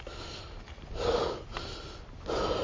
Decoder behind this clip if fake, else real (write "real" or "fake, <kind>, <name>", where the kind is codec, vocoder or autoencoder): real